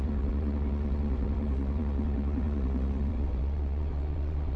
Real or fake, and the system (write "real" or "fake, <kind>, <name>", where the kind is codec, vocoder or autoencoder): fake, vocoder, WaveNeXt